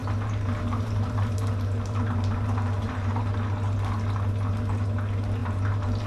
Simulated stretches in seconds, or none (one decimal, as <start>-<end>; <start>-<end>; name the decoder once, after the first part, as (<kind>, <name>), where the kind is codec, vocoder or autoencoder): 0.0-3.3 (vocoder, BigVGAN v2); 5.4-6.1